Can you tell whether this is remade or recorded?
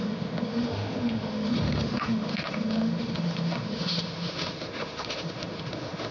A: remade